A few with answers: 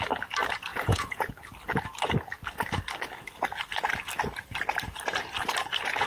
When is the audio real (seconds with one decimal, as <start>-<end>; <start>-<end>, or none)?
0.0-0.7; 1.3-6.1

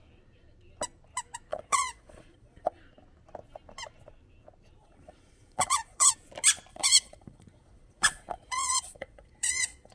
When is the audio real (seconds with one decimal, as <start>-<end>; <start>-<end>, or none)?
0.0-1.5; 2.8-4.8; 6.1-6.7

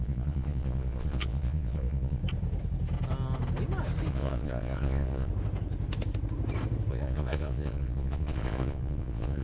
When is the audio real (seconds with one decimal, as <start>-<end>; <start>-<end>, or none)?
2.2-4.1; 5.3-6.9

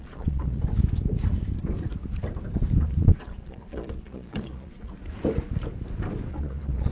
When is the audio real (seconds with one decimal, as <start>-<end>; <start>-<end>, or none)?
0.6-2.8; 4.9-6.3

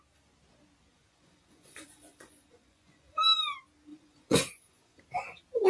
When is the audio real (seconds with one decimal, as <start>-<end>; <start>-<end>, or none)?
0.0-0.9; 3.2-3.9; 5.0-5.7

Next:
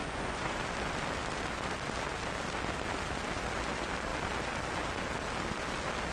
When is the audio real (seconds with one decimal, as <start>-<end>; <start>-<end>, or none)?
0.6-6.1